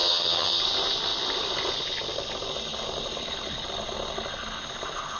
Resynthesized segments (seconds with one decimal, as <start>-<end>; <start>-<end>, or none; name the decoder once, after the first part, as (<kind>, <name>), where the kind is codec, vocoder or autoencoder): 0.0-0.6 (vocoder, HiFi-GAN)